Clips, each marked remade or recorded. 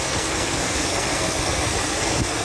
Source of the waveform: remade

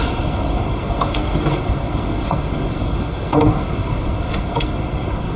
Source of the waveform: remade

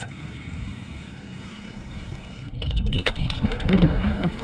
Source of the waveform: remade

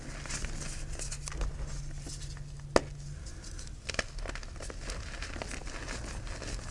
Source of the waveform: recorded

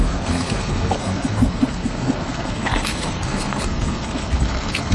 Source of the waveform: remade